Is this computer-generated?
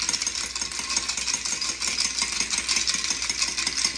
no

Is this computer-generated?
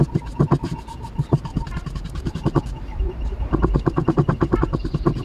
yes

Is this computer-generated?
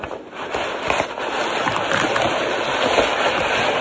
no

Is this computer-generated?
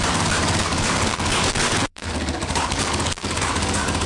yes